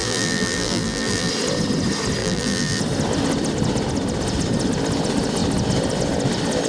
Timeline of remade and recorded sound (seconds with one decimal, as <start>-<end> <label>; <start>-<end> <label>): 0.0-1.3 remade; 1.3-2.2 recorded; 2.2-2.8 remade; 2.8-6.7 recorded